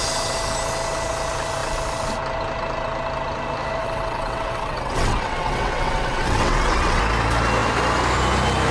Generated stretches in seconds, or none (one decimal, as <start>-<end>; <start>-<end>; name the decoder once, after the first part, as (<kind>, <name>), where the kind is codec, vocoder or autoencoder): 3.8-7.0 (vocoder, WaveNeXt)